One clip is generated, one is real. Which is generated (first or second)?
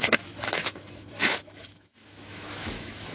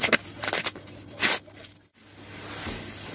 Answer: first